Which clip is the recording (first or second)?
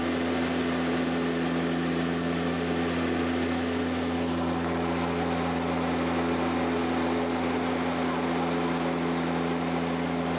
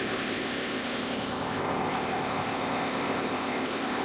first